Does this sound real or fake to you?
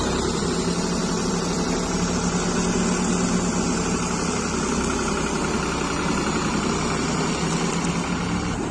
real